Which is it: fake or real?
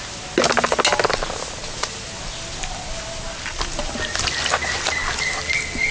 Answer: real